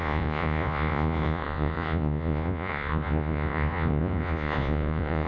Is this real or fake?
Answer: fake